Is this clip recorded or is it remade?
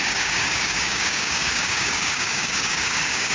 remade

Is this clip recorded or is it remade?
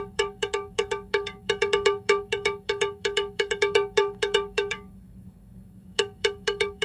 remade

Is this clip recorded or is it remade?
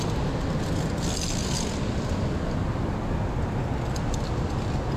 recorded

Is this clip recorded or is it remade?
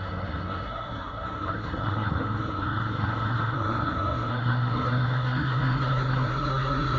remade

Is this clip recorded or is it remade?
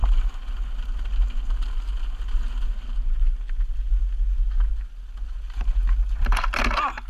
recorded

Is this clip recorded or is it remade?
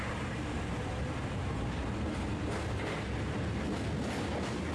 recorded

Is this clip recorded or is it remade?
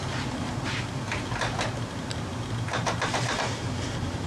recorded